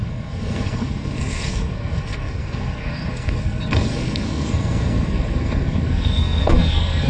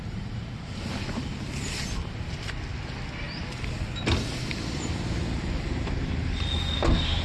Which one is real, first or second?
second